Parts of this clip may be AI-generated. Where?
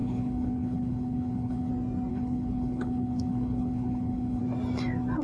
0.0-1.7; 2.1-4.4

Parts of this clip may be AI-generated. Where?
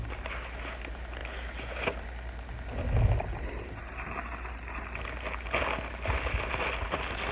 none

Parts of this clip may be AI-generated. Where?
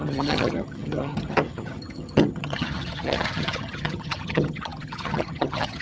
0.0-5.8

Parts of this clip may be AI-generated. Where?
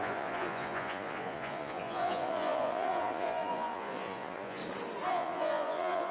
0.0-4.6; 5.1-6.1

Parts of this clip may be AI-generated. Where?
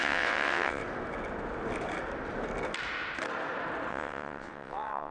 0.0-0.8; 3.9-5.1